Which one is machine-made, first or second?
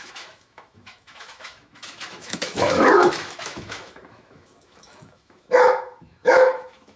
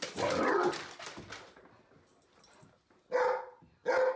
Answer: first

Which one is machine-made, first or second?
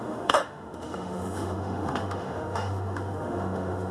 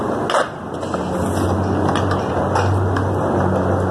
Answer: first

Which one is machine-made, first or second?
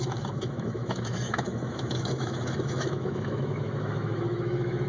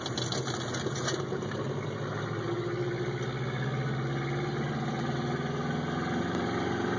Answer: first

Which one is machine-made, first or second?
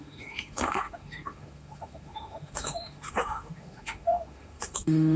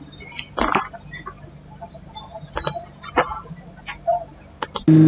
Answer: first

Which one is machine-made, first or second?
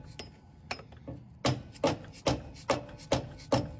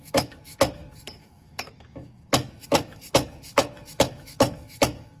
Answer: second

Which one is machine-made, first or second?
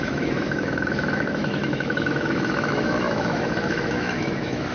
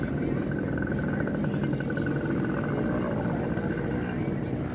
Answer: first